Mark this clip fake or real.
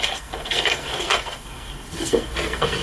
fake